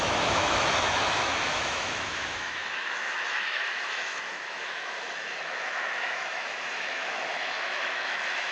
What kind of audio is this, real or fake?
fake